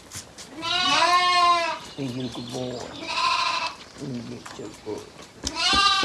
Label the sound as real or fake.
real